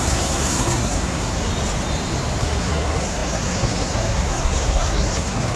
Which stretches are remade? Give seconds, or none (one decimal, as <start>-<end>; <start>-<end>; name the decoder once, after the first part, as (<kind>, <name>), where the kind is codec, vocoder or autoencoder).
0.0-1.5 (codec, SNAC); 2.4-5.6